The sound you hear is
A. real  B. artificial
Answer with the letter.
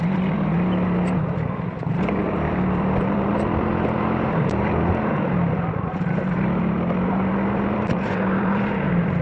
B